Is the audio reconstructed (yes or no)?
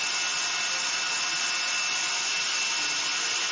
no